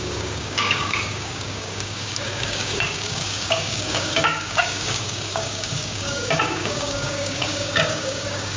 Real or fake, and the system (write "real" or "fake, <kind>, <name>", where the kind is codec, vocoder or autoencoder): fake, codec, DAC